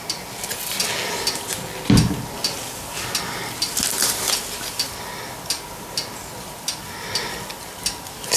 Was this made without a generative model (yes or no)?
yes